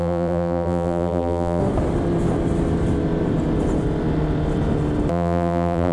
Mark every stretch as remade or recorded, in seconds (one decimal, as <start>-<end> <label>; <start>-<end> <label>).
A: 0.0-1.6 remade; 1.6-5.1 recorded; 5.1-5.9 remade